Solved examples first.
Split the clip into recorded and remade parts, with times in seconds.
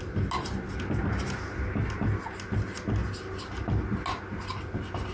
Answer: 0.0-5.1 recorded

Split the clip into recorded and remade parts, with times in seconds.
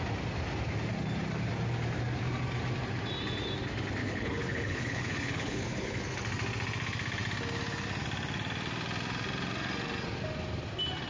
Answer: 0.0-4.0 recorded; 4.0-6.0 remade; 6.0-11.1 recorded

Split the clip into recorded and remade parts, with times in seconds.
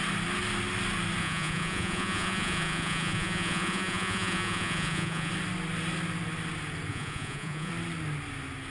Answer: 0.0-1.2 recorded; 1.2-5.3 remade; 5.3-6.9 recorded; 6.9-7.7 remade; 7.7-8.7 recorded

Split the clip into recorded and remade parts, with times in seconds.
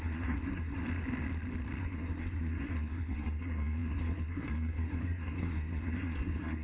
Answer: 0.0-0.8 remade; 0.8-1.8 recorded; 1.8-6.6 remade